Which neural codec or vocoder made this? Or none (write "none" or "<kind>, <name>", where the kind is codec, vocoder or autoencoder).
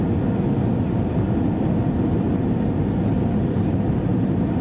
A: none